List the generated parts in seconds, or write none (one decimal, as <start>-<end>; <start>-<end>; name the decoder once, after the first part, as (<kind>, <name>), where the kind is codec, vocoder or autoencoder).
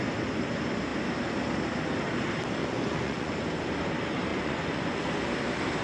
2.6-3.3 (vocoder, Vocos); 4.3-5.0